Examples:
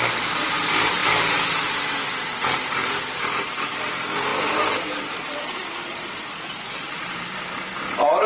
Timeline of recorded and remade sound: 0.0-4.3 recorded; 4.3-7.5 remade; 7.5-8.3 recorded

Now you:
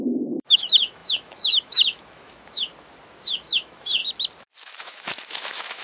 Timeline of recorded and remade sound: 0.0-2.7 remade; 2.7-3.3 recorded; 3.3-4.0 remade; 4.0-4.6 recorded; 4.6-5.8 remade

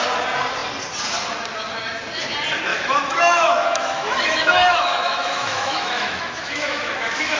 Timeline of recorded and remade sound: 0.0-2.7 recorded; 2.7-7.4 remade

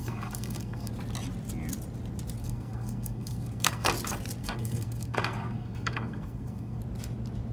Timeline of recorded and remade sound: 0.0-0.9 remade; 0.9-2.4 recorded; 2.4-3.9 remade; 3.9-4.4 recorded; 4.4-6.8 remade; 6.8-7.5 recorded